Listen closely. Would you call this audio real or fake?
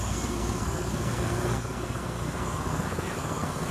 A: fake